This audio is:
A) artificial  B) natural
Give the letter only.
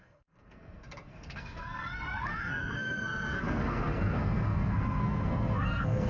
A